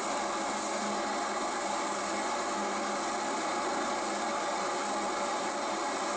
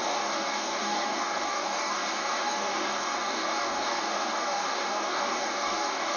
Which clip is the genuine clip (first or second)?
first